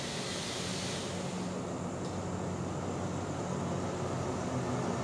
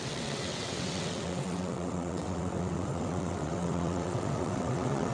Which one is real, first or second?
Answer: first